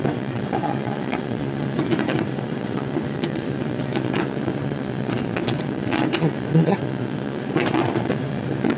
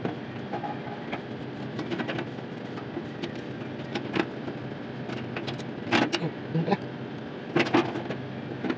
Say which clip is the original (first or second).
second